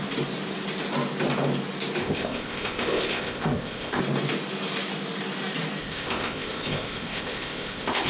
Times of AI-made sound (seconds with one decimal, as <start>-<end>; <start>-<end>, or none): 2.0-4.0; 5.8-8.1